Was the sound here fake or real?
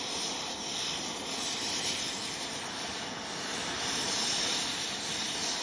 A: fake